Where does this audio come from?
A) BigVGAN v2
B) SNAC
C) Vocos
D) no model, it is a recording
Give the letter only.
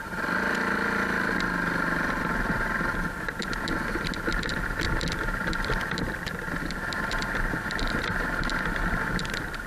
D